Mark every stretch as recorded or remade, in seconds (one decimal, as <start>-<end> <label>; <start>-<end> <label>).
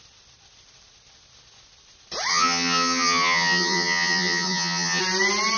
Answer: 0.0-2.3 recorded; 2.3-5.0 remade; 5.0-5.6 recorded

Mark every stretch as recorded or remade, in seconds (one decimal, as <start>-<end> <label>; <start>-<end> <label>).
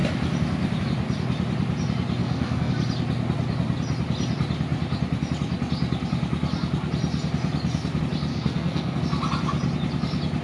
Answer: 0.0-2.2 recorded; 2.2-2.7 remade; 2.7-8.3 recorded; 8.3-9.0 remade; 9.0-10.4 recorded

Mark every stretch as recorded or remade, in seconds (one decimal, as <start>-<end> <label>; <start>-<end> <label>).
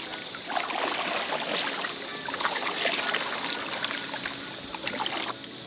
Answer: 0.0-5.7 recorded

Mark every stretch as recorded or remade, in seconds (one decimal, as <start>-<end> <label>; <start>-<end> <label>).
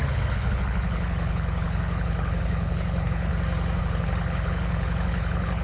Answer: 0.0-3.3 remade; 3.3-3.8 recorded; 3.8-5.6 remade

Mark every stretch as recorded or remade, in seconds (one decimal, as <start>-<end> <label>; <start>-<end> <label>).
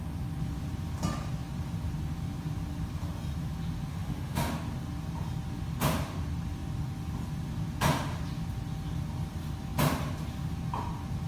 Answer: 0.0-3.9 recorded; 3.9-4.5 remade; 4.5-11.3 recorded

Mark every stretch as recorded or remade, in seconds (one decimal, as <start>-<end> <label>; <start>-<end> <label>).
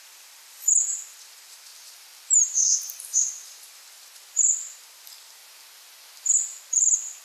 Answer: 0.0-1.7 remade; 1.7-2.4 recorded; 2.4-5.4 remade; 5.4-6.7 recorded; 6.7-7.2 remade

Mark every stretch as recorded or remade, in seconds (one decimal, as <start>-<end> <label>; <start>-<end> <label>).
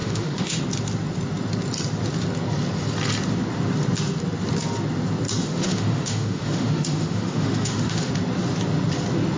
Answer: 0.0-0.6 remade; 0.6-5.4 recorded; 5.4-8.1 remade; 8.1-9.4 recorded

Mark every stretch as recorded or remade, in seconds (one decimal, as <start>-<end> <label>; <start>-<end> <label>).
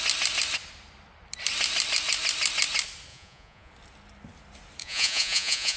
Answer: 0.0-3.1 recorded; 3.1-3.7 remade; 3.7-4.8 recorded; 4.8-5.8 remade